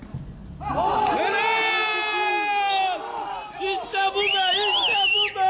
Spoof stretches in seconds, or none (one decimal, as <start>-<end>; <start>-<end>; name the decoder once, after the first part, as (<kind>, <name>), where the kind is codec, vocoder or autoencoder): none